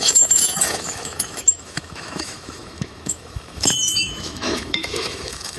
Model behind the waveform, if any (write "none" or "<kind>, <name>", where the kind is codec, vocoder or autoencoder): autoencoder, DAC-VAE